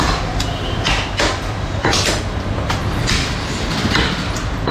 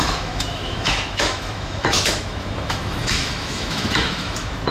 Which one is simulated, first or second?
second